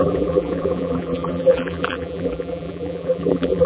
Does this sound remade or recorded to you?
remade